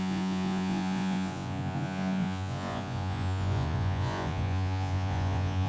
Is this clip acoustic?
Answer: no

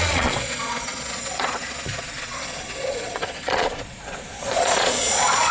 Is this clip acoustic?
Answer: no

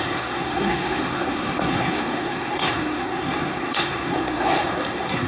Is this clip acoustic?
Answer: no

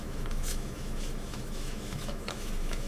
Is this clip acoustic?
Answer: no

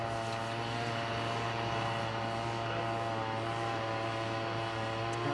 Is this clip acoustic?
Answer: yes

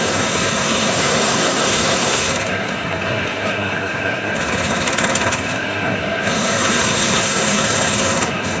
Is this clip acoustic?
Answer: no